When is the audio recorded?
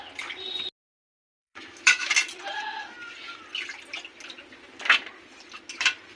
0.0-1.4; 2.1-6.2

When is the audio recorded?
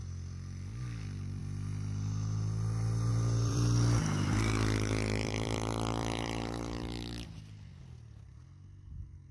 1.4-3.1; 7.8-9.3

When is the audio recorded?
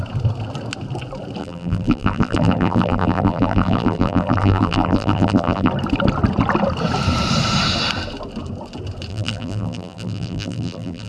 0.0-1.4; 5.7-9.1